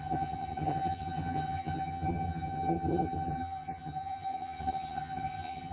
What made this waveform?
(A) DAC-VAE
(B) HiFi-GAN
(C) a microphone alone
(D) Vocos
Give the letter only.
B